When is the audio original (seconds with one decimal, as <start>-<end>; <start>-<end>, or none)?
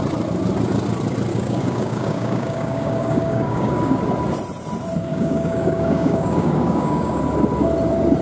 0.0-1.3; 4.0-5.1; 7.2-8.2